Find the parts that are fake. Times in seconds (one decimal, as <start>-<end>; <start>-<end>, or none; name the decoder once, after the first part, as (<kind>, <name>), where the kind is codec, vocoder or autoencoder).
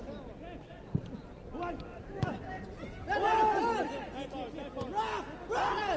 none